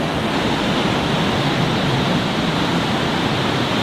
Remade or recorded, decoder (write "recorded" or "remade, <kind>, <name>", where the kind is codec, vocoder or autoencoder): recorded